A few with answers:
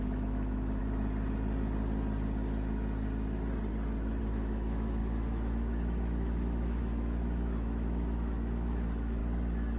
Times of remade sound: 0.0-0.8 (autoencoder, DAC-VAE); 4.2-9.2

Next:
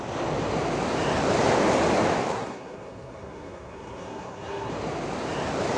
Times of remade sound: 2.3-4.7 (codec, SNAC)

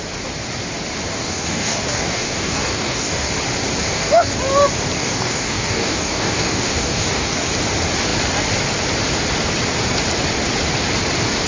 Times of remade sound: 1.1-3.3 (codec, DAC); 3.8-4.3; 5.0-7.5

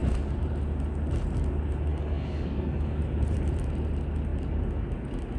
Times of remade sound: 1.9-3.0 (codec, DAC)

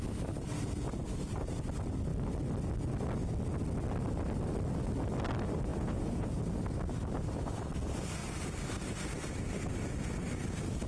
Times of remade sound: 5.7-6.4 (vocoder, Vocos)

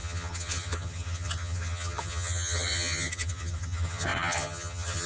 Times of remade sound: 0.0-5.1 (vocoder, HiFi-GAN)

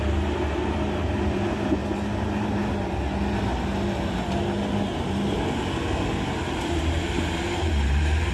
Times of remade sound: 0.0-1.8 (vocoder, BigVGAN v2); 6.6-8.3